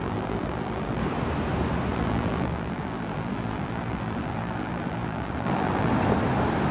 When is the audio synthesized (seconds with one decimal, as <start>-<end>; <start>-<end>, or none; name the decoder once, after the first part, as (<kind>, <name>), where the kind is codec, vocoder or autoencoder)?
0.0-1.0 (vocoder, BigVGAN v2); 1.9-5.9